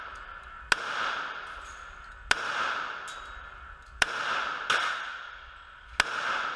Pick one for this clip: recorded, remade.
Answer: recorded